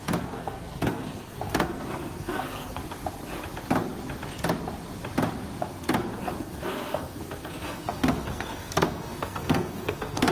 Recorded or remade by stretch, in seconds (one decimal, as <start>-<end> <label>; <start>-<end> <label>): 0.0-2.8 remade; 2.8-5.6 recorded; 5.6-10.3 remade